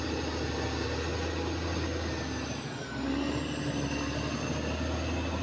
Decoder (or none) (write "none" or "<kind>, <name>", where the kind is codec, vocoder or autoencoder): none